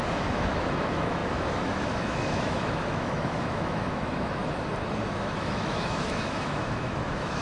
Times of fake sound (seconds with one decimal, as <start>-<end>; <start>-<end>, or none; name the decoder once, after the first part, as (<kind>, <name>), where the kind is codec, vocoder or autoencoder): 0.0-4.4 (autoencoder, DAC-VAE); 5.1-7.4